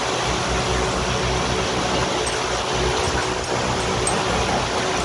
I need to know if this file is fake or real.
real